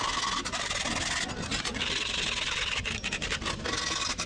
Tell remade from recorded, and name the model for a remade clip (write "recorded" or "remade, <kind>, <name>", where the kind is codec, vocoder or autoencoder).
recorded